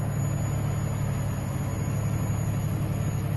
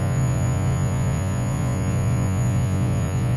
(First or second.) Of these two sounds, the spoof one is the second